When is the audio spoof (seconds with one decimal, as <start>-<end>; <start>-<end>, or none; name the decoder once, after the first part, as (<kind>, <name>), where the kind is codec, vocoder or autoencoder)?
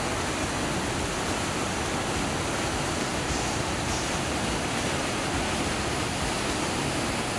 3.1-4.1 (vocoder, BigVGAN v2)